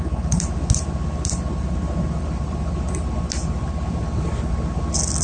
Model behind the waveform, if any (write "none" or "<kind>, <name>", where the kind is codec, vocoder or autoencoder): none